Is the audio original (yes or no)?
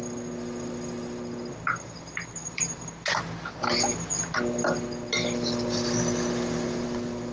yes